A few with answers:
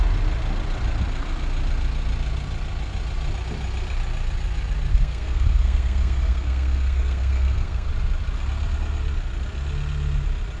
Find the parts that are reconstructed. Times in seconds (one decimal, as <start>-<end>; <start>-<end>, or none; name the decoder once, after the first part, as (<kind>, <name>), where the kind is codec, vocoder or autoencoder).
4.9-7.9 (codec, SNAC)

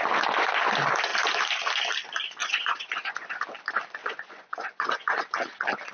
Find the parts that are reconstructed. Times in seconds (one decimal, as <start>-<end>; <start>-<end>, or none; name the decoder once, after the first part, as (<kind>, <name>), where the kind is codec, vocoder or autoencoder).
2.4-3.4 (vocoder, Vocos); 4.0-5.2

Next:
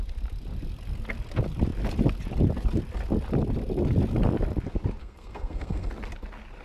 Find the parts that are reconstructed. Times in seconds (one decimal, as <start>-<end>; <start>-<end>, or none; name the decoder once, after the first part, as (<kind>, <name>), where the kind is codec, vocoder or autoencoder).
5.0-5.9 (codec, SNAC)